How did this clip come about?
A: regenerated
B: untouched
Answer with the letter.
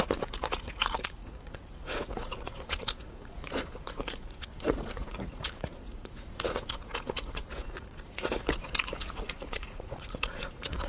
A